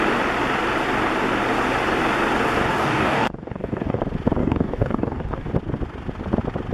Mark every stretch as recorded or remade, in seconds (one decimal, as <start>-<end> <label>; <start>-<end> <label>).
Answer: 0.0-2.7 recorded; 2.7-4.0 remade; 4.0-4.4 recorded; 4.4-5.5 remade; 5.5-6.7 recorded